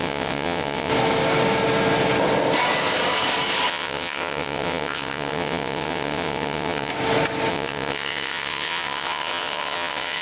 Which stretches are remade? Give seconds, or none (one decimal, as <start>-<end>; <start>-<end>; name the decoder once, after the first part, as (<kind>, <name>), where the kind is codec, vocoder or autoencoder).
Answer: 0.0-0.9 (vocoder, WaveNeXt); 3.7-6.9; 7.5-10.2